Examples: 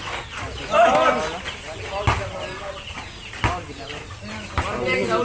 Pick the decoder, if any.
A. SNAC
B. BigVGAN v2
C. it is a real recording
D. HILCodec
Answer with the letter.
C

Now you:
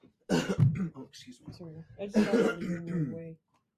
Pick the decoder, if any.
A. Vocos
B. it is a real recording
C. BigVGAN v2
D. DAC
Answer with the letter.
C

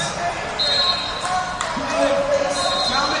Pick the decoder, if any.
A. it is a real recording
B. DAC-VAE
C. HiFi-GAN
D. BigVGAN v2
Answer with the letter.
D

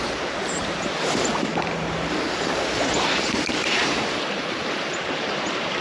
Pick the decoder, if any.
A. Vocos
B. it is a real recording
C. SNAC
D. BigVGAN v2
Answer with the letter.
D